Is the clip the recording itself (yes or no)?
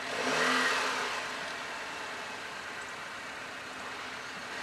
yes